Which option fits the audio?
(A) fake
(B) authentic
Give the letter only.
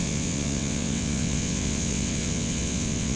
A